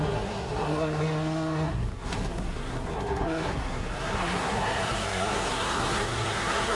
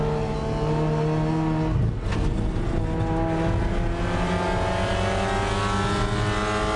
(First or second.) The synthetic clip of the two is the first